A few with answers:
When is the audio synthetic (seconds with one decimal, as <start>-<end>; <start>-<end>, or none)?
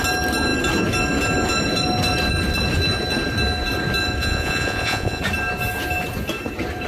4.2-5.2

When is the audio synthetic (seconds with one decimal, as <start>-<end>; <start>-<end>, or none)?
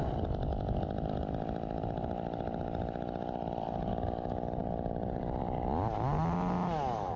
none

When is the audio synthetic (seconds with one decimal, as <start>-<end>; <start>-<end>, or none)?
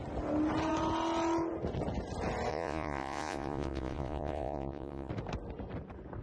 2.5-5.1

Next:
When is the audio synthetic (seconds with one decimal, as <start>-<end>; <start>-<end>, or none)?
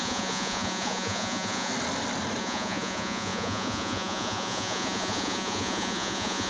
0.0-1.7; 2.4-6.5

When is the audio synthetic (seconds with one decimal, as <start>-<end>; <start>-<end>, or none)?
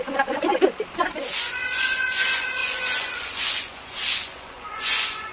0.0-0.5; 1.2-5.3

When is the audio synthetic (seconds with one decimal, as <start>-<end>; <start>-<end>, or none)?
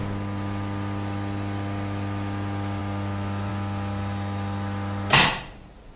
none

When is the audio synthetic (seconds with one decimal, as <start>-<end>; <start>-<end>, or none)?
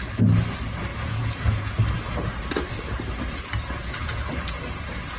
0.9-1.8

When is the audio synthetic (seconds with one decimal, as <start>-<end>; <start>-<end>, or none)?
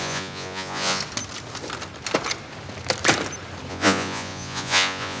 0.0-1.0; 3.7-5.2